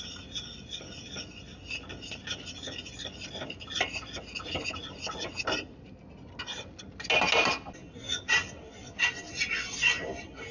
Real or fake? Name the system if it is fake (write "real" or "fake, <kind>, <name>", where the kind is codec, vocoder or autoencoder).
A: real